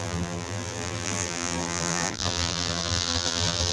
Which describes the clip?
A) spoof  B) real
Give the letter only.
A